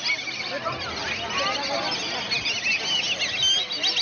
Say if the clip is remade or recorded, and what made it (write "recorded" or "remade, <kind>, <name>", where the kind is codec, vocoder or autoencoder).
recorded